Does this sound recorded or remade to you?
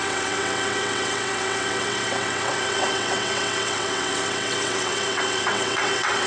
remade